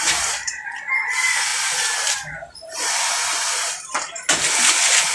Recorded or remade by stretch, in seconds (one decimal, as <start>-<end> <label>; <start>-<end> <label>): 0.0-5.1 recorded